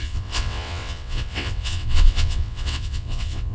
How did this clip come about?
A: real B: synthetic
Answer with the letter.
B